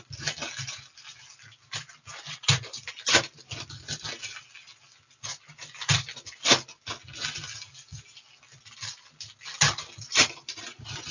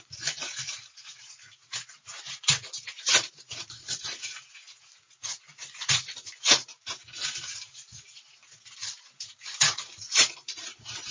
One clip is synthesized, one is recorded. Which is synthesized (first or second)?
second